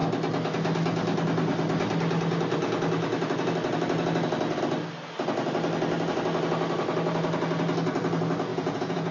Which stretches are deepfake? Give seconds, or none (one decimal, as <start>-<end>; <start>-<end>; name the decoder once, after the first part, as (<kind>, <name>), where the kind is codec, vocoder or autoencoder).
8.5-9.1 (vocoder, Vocos)